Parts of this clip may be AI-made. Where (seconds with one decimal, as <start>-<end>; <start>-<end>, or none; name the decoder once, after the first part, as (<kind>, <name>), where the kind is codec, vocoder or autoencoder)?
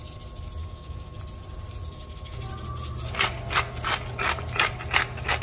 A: 0.6-1.2 (codec, DAC)